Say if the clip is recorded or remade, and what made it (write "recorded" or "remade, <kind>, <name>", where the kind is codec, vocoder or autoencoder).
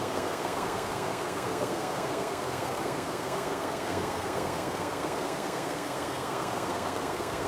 remade, codec, SNAC